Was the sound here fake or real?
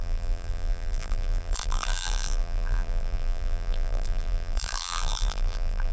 fake